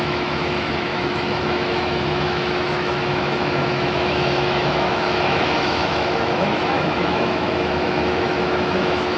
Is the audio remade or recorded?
remade